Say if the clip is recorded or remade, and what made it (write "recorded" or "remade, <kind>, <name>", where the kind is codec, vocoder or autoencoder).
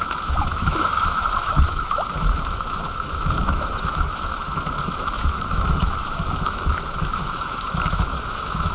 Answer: remade, autoencoder, DAC-VAE